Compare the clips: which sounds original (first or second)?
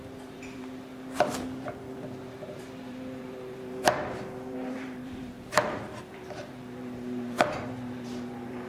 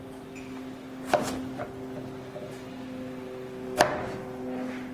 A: second